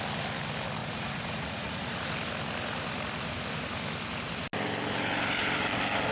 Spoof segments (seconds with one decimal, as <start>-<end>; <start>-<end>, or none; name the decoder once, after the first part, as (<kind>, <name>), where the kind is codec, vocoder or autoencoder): 0.8-2.0 (vocoder, Vocos)